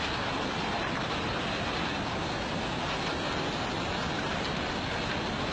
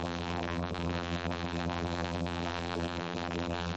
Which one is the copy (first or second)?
second